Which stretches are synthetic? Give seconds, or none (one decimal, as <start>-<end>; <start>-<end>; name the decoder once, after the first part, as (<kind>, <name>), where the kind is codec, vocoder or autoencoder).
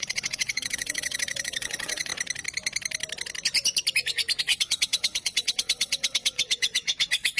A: 0.0-2.1 (vocoder, WaveNeXt); 4.4-7.4